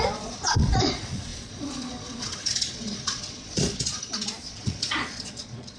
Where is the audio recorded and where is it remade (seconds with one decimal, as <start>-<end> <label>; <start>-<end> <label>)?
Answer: 0.0-5.8 remade